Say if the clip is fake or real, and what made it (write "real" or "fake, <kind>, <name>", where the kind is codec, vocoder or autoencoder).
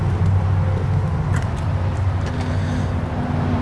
real